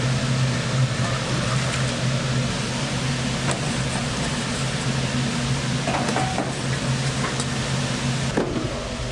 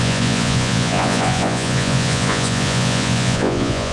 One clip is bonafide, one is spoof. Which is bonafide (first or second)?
first